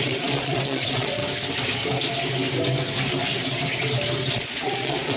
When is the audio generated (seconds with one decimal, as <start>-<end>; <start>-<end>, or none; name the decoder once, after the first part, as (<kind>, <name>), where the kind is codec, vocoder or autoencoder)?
0.0-1.2 (vocoder, Vocos); 4.3-5.2